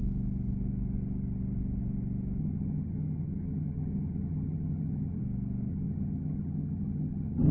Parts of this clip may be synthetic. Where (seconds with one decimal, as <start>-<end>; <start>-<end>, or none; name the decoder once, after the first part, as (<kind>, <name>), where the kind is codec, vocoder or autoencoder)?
2.4-5.2 (vocoder, HiFi-GAN); 5.7-7.5